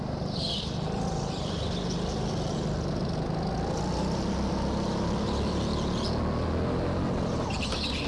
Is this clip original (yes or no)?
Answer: yes